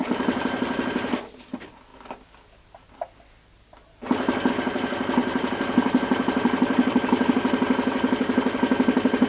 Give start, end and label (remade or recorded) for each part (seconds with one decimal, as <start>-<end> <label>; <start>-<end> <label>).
0.0-5.2 recorded; 5.2-7.3 remade; 7.3-9.3 recorded